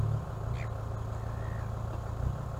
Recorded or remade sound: recorded